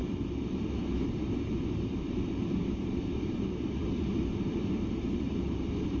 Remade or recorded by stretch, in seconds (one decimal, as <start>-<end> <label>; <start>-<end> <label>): 0.0-0.6 recorded; 0.6-6.0 remade